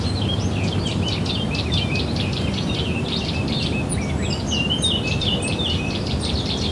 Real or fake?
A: real